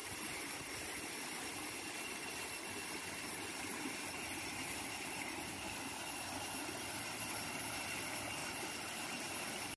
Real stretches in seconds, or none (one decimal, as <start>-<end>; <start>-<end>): 1.7-3.7; 5.3-8.4; 9.2-9.8